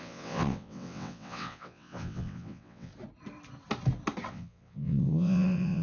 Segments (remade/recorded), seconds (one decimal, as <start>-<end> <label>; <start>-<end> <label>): 0.0-2.9 remade; 2.9-4.3 recorded; 4.3-5.8 remade